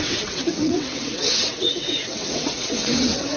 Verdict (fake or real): fake